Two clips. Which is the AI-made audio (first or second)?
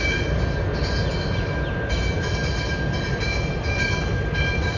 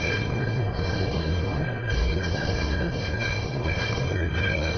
second